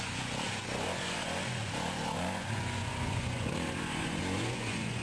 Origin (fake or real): fake